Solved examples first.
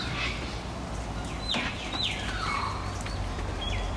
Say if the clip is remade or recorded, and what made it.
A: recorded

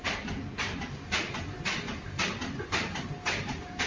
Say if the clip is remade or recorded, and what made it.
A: recorded